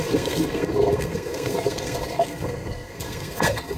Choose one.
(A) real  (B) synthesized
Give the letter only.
B